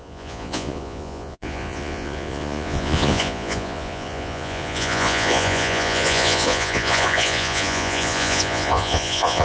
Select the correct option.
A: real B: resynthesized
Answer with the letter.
B